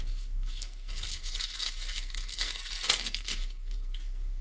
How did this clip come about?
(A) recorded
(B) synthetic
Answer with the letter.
B